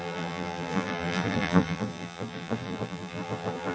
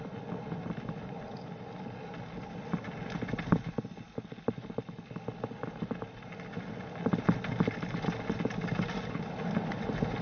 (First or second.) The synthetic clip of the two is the first